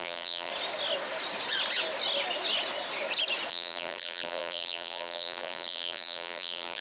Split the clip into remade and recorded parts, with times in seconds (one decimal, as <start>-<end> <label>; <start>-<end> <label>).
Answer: 0.0-0.5 remade; 0.5-3.5 recorded; 3.5-6.8 remade